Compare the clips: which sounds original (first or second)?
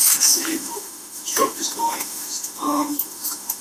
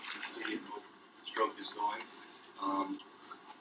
second